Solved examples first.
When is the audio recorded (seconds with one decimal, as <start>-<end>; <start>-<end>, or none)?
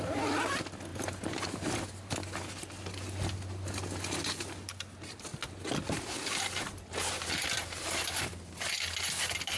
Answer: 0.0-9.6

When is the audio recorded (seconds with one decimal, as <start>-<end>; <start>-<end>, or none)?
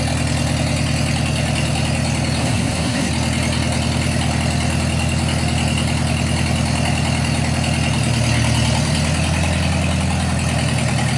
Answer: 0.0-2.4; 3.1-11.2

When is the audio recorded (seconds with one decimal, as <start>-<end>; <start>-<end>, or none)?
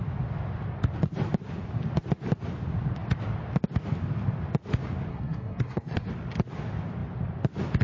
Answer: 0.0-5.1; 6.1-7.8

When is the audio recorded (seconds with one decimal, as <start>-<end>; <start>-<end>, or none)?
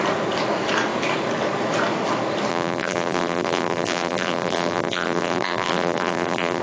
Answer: 0.0-2.5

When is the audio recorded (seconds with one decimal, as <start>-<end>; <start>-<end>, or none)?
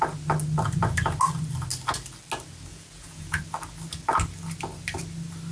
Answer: 0.0-2.7; 3.4-5.5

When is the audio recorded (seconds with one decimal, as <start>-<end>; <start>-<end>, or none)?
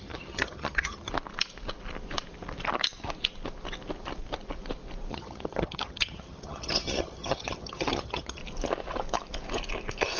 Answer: 1.1-5.1; 8.4-10.2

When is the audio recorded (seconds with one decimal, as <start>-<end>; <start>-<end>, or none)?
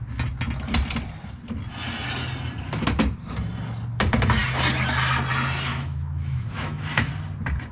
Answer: 0.0-5.7; 7.1-7.7